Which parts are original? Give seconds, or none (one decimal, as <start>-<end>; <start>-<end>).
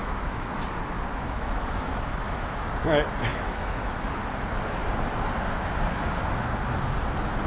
0.5-1.1; 2.7-3.3; 3.9-7.5